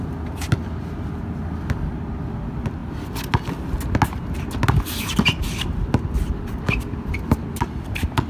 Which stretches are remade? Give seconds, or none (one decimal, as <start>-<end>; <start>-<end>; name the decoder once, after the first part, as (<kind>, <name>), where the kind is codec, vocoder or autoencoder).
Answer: none